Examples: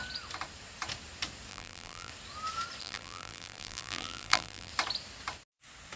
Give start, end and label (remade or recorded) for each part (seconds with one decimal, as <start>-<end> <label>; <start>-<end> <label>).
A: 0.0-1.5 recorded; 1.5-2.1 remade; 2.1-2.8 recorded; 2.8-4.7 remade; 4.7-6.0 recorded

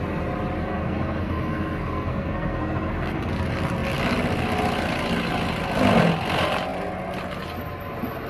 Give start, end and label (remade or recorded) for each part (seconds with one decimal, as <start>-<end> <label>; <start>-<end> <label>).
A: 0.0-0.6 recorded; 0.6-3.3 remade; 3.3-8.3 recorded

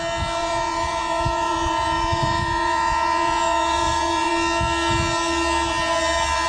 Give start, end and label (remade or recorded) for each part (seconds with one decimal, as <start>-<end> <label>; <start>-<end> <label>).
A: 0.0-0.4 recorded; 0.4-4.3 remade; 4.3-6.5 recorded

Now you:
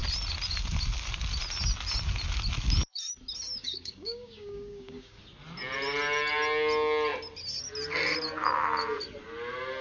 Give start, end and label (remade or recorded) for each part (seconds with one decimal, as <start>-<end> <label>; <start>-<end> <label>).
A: 0.0-3.6 recorded; 3.6-5.2 remade; 5.2-9.8 recorded